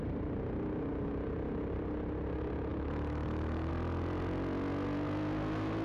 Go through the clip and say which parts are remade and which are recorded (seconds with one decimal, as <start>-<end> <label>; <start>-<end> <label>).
0.0-2.7 recorded; 2.7-3.7 remade; 3.7-5.8 recorded